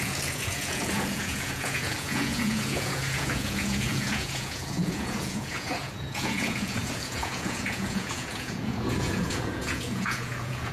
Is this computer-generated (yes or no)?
yes